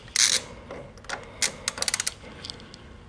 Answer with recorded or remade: recorded